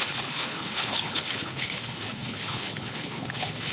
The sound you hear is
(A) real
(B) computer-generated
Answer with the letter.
B